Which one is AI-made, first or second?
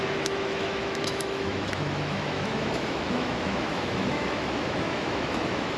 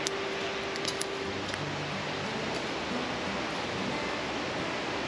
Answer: first